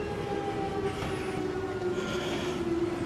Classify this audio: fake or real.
real